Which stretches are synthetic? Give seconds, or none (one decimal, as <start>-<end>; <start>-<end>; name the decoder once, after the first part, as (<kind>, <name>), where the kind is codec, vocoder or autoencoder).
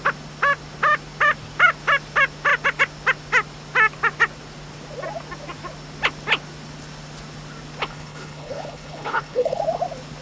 7.9-9.6 (codec, HILCodec)